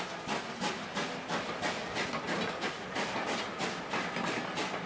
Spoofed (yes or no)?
no